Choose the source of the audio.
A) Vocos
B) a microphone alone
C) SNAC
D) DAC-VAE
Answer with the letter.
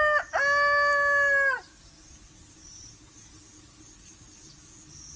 B